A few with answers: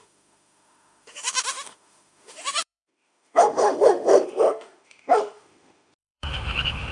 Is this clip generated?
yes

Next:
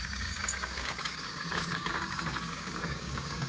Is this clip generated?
yes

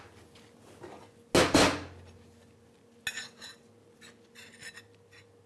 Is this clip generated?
no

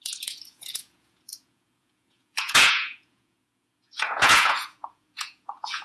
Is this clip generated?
yes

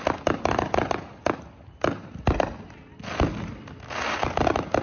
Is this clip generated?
no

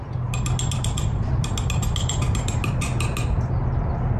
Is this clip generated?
no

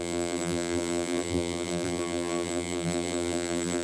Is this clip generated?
yes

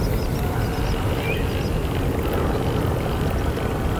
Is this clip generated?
no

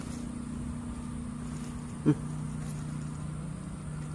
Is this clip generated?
no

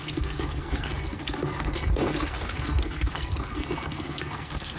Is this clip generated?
yes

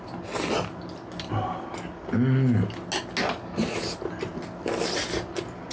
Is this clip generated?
no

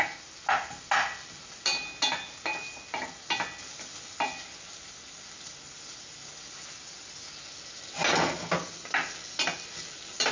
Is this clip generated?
no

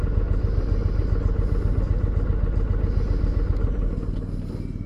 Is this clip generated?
no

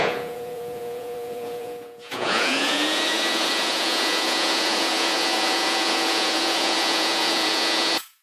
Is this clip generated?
yes